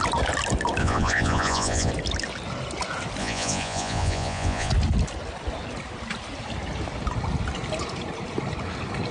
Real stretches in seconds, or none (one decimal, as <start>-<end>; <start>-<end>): 0.0-0.8; 1.9-3.2; 4.7-9.1